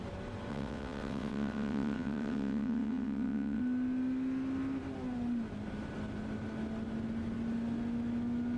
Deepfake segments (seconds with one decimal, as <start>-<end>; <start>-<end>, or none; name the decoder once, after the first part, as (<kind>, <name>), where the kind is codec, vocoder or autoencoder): 0.5-3.6 (vocoder, WaveNeXt)

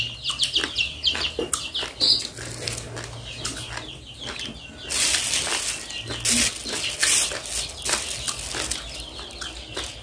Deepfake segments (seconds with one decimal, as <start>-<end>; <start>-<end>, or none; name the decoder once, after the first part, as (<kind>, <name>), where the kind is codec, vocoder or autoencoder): none

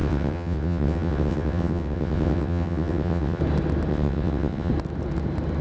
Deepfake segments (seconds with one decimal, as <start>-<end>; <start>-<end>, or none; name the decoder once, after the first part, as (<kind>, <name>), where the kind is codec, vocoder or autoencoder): 0.0-3.4 (vocoder, WaveNeXt); 3.9-4.7

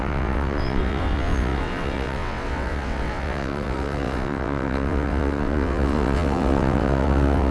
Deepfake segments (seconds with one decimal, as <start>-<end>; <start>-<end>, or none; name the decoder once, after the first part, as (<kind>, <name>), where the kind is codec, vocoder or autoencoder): 0.0-7.5 (vocoder, WaveNeXt)

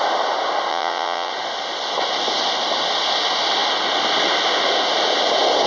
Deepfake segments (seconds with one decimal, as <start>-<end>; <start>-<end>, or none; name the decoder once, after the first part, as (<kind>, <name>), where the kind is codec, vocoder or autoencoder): 0.7-1.3 (vocoder, WaveNeXt)

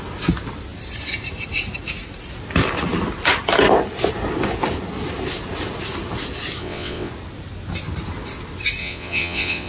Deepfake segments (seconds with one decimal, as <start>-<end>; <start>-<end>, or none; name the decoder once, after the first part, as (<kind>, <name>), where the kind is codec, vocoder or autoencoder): 6.6-7.1 (vocoder, WaveNeXt); 8.8-9.7

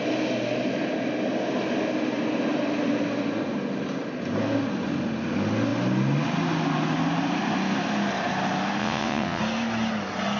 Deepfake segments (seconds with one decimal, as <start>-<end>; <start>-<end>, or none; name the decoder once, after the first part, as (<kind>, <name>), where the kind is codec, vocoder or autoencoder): 8.8-9.4 (vocoder, WaveNeXt)

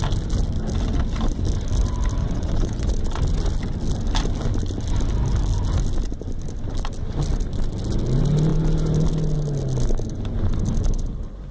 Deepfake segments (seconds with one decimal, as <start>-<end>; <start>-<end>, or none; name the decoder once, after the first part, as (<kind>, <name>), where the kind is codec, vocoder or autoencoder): 2.2-2.9 (vocoder, WaveNeXt)